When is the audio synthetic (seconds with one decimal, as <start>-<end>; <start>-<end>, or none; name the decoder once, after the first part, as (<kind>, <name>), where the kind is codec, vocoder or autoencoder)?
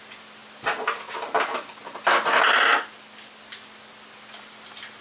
none